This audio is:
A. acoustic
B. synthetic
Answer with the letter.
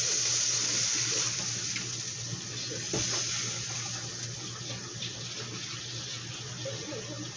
A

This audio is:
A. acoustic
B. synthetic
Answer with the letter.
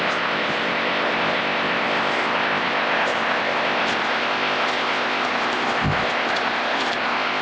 B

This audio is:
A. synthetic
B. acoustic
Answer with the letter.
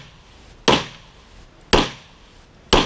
B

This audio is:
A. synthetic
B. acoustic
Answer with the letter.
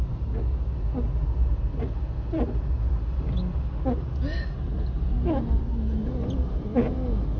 B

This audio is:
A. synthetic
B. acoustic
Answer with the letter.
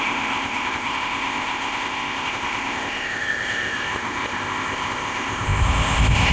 A